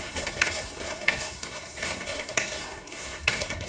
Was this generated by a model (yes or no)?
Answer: yes